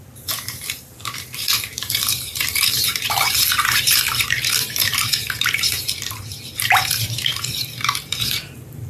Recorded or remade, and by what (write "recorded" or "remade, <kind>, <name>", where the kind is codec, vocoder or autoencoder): remade, vocoder, BigVGAN v2